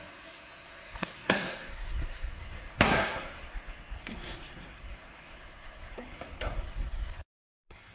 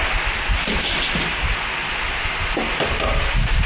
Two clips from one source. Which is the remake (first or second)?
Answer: first